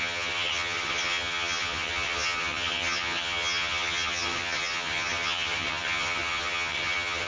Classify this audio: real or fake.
fake